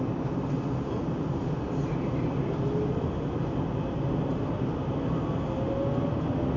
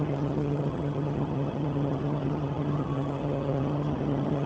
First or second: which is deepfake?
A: second